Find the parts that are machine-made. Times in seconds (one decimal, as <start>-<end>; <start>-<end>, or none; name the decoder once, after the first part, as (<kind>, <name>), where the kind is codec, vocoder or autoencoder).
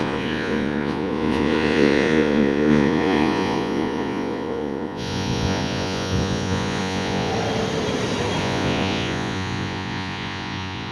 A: 0.0-7.3 (vocoder, Vocos); 8.4-10.9